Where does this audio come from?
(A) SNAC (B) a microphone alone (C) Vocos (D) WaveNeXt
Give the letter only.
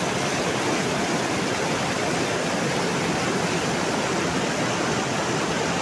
B